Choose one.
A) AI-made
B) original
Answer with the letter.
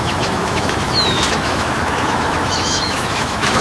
A